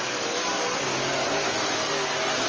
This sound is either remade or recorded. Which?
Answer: recorded